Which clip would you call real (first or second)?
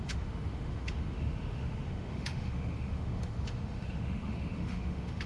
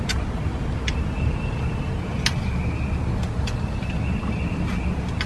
second